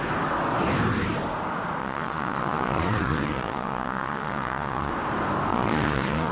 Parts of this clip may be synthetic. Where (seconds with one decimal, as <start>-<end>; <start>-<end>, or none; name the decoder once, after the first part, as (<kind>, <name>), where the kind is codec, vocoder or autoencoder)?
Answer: 1.8-4.9 (vocoder, Vocos); 5.5-6.3